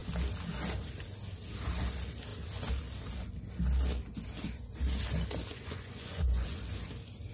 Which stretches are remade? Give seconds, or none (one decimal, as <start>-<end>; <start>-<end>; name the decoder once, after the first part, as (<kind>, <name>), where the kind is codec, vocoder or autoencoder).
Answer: 5.5-6.6 (vocoder, Vocos)

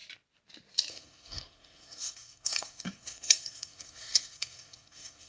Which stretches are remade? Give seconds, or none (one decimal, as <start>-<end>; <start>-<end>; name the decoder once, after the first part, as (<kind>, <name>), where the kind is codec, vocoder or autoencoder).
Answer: 0.9-5.3 (codec, SNAC)

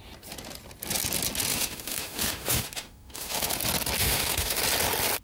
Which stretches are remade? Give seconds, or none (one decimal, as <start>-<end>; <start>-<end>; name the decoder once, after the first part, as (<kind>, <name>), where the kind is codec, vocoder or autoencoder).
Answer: 1.5-3.5 (autoencoder, DAC-VAE); 4.0-4.6

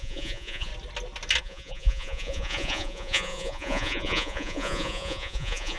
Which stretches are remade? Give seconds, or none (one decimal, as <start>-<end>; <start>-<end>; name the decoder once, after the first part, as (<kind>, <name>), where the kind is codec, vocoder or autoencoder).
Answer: 0.0-0.7 (vocoder, Vocos); 1.4-5.8

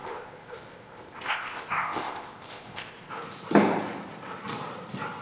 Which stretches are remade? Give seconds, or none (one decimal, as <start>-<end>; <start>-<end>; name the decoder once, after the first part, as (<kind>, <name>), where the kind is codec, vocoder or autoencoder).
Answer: 0.0-3.1 (codec, ZipCodec)

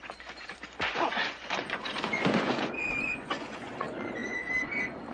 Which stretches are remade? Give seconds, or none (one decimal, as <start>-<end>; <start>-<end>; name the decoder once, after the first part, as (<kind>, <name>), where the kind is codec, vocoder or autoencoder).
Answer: 0.0-5.1 (vocoder, Vocos)

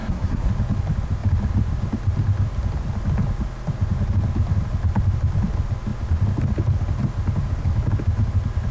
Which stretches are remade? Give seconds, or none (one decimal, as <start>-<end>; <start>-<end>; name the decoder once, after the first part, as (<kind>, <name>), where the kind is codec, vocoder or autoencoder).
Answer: 0.0-0.5 (codec, SNAC)

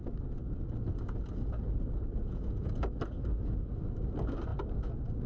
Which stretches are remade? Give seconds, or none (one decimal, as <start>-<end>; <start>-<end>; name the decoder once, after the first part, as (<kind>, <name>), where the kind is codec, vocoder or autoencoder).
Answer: 2.2-2.7 (vocoder, Vocos)